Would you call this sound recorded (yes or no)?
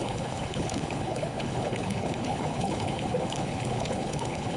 no